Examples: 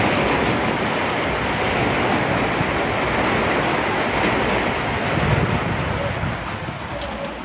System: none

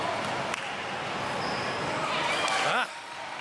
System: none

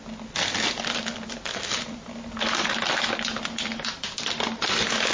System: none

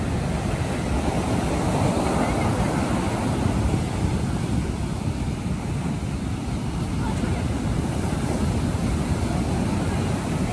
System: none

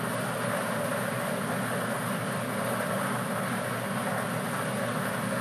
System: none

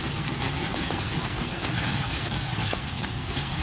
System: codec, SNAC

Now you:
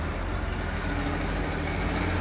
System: none